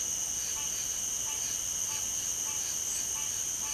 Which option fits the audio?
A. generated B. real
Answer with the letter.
B